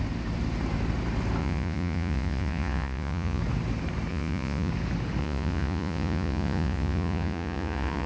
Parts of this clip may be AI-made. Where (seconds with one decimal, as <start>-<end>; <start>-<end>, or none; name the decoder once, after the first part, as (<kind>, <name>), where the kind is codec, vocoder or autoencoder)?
1.4-3.4 (vocoder, Vocos); 4.1-4.7; 5.2-8.1